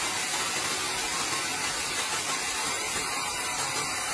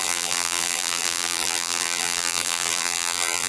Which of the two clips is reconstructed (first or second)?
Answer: second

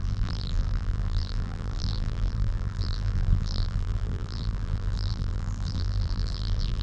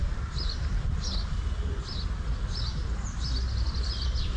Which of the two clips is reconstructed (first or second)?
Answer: first